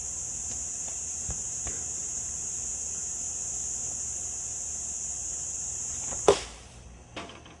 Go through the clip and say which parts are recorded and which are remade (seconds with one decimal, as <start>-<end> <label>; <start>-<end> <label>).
0.0-7.6 remade